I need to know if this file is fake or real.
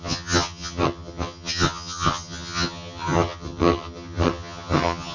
fake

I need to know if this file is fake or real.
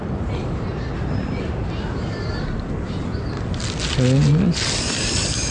real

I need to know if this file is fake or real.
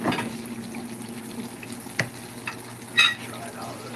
real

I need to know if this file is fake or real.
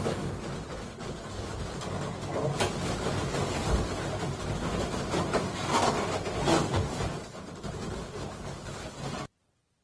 real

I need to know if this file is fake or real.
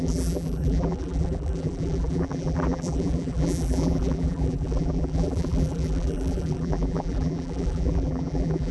fake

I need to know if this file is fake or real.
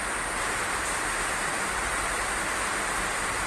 real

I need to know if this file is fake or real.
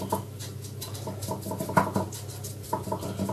real